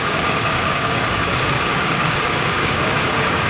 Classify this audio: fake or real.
fake